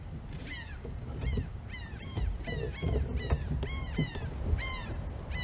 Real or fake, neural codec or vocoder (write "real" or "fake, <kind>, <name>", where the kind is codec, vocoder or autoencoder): fake, vocoder, BigVGAN v2